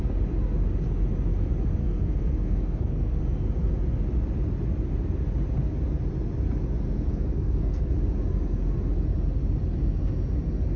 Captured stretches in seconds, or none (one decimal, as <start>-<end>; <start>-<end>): 0.0-1.8; 3.2-7.1; 7.9-10.8